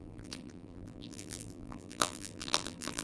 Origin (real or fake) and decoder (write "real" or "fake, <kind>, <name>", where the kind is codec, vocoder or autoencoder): fake, vocoder, BigVGAN v2